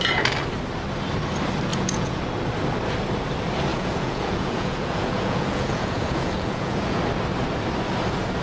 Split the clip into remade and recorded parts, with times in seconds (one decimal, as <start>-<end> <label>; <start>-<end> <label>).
0.0-1.7 recorded; 1.7-2.2 remade; 2.2-3.7 recorded; 3.7-7.0 remade; 7.0-8.4 recorded